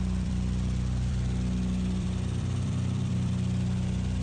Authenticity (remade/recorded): remade